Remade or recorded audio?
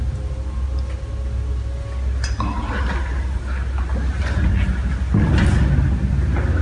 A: recorded